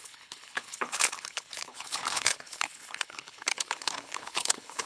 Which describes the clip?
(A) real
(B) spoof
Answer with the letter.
B